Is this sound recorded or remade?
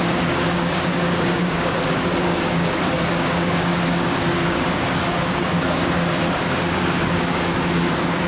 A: remade